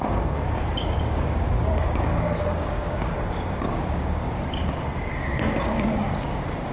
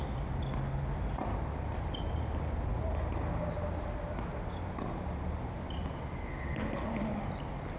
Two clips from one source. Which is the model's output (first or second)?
first